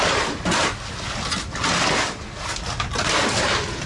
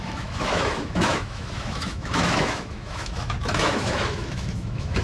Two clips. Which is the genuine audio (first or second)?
first